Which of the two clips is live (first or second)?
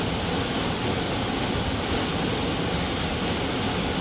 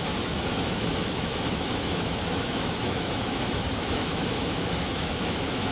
first